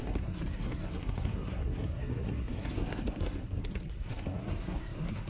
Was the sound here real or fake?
fake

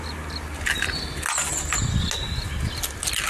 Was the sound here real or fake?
real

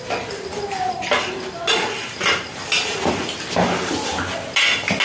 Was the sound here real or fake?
real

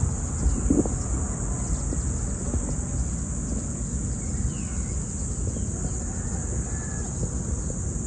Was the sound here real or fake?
real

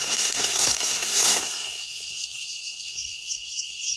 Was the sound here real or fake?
fake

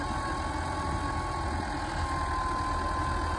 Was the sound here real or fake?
real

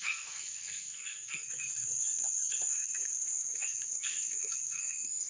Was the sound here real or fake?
fake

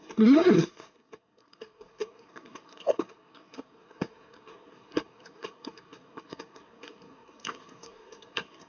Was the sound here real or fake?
fake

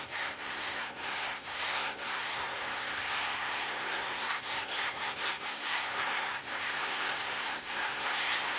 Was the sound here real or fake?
fake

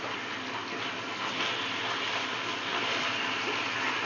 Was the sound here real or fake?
real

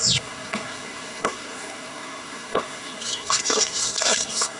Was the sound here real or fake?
fake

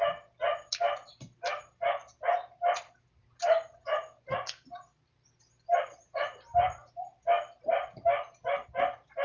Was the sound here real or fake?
real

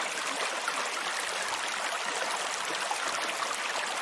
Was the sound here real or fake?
real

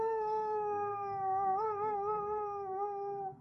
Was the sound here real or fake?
fake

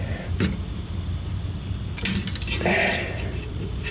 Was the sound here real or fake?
real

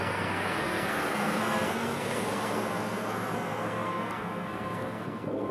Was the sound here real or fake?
fake